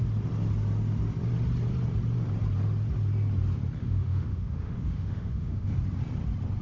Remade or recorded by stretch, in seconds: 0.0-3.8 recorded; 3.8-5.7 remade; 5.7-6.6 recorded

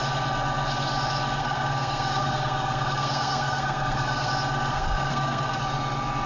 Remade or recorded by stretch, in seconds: 0.0-1.4 recorded; 1.4-4.3 remade; 4.3-4.7 recorded; 4.7-5.6 remade; 5.6-6.3 recorded

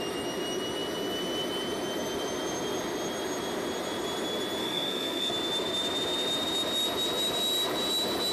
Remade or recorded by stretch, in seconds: 0.0-4.6 recorded; 4.6-5.3 remade; 5.3-8.3 recorded

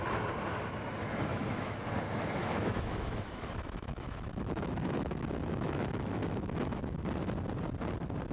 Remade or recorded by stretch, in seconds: 0.0-1.3 recorded; 1.3-1.8 remade; 1.8-2.4 recorded; 2.4-6.8 remade; 6.8-8.3 recorded

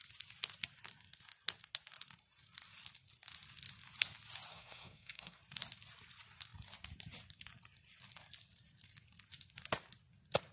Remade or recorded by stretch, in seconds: 0.0-4.5 recorded; 4.5-5.4 remade; 5.4-10.5 recorded

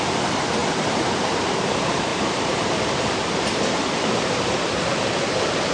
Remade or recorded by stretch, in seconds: 0.0-5.7 remade

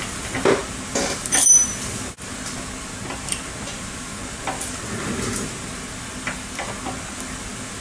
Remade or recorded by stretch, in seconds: 0.0-7.8 recorded

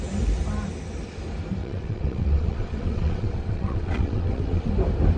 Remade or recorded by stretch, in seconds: 0.0-1.6 recorded; 1.6-4.7 remade; 4.7-5.2 recorded